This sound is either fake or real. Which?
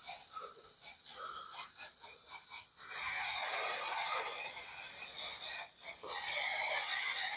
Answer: real